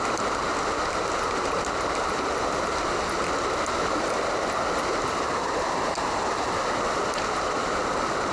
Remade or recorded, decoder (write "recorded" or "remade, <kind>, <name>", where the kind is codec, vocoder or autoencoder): recorded